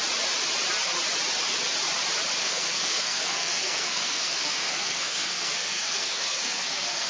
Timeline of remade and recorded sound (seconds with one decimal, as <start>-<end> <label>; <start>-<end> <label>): 0.0-2.4 recorded; 2.4-7.1 remade

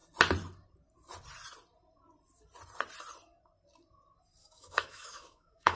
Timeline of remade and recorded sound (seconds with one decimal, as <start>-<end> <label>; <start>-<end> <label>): 0.0-4.4 recorded; 4.4-5.8 remade

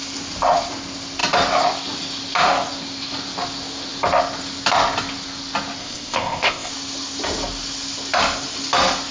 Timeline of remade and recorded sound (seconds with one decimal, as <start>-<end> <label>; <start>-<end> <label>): 0.0-5.8 recorded; 5.8-6.7 remade; 6.7-9.1 recorded